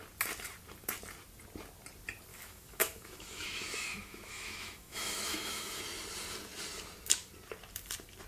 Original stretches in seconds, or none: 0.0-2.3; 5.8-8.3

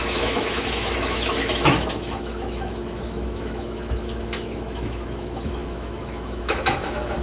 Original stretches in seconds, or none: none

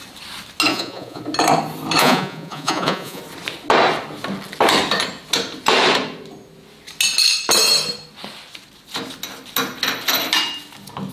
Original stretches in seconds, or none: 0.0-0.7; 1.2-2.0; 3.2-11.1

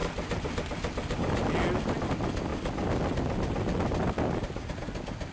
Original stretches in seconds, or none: 0.0-5.3